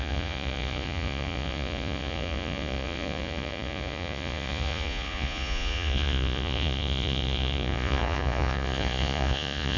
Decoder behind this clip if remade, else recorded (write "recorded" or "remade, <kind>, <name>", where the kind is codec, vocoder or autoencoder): remade, vocoder, Vocos